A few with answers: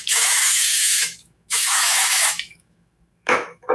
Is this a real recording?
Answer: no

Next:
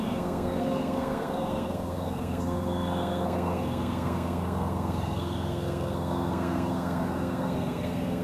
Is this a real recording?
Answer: no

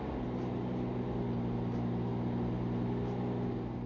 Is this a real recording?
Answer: yes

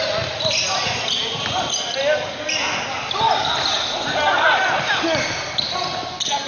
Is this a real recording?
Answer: yes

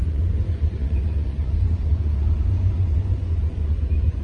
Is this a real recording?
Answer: no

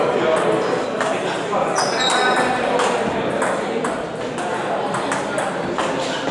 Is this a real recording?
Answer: yes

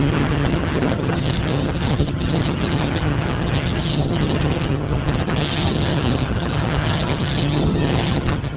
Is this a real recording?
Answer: no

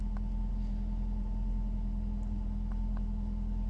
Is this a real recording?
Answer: yes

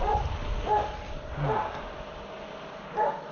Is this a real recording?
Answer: yes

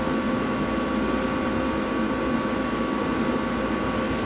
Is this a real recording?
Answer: yes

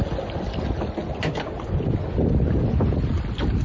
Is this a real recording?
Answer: yes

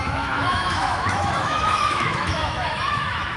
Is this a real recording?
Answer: no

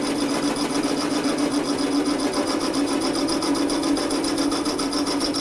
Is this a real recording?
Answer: yes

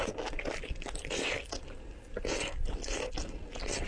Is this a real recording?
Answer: yes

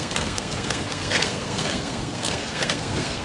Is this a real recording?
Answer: no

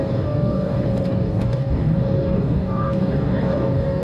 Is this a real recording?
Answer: no